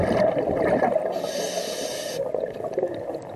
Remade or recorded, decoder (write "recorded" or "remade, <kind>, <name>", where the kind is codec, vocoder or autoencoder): recorded